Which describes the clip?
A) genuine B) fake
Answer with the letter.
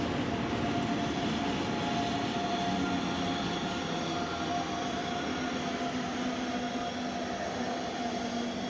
A